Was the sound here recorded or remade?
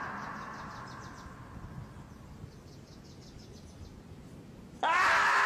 recorded